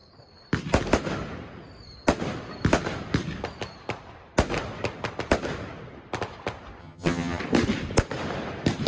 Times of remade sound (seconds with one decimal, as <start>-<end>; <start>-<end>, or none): 6.8-7.4